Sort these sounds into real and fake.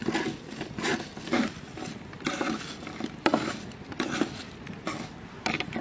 real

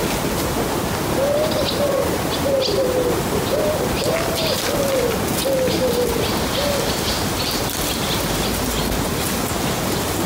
real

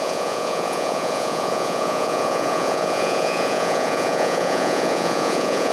fake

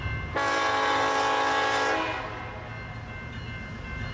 real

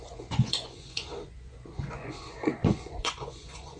fake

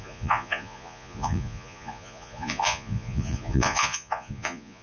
fake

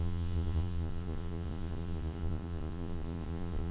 fake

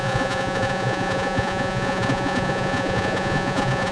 fake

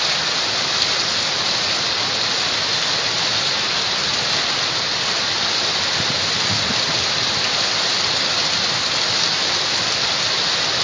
real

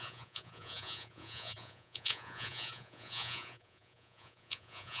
fake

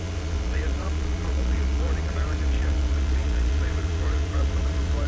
fake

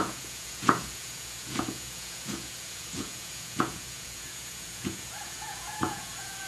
fake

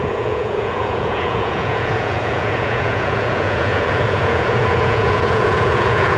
fake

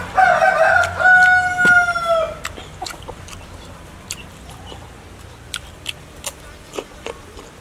real